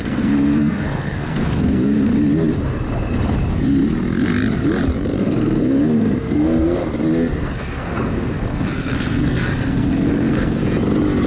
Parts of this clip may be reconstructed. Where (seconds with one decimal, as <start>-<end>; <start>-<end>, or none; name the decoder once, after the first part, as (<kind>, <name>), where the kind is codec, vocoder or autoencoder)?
0.0-2.1 (codec, SNAC); 5.2-6.8; 7.4-10.6